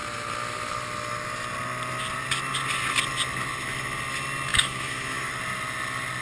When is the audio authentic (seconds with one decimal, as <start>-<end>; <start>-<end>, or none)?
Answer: 0.0-4.5; 5.3-6.2